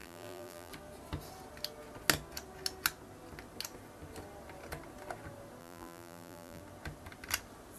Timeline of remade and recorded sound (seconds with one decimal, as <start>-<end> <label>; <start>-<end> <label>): 0.0-0.7 remade; 0.7-5.6 recorded; 5.6-6.6 remade; 6.6-7.8 recorded